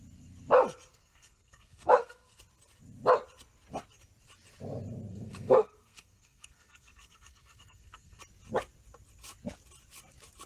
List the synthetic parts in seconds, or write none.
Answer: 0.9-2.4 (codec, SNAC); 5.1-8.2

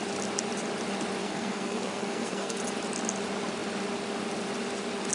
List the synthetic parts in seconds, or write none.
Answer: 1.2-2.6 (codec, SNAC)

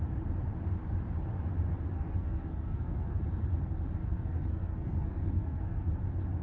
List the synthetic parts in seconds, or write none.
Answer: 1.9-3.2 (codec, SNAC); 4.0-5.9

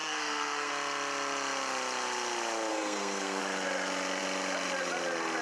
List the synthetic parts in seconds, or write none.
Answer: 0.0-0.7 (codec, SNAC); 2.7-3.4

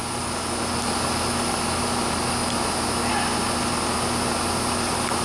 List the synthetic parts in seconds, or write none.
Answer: none

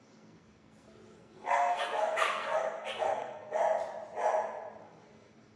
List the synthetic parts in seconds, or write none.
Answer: 0.0-3.6 (codec, SNAC); 4.8-5.6

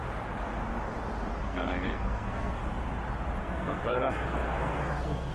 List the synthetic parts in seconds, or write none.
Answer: 1.4-2.6 (codec, SNAC); 3.4-5.3